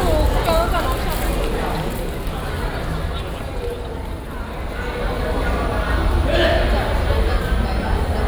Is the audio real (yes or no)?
yes